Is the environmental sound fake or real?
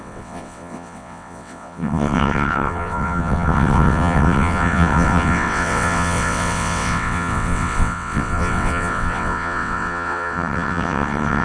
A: fake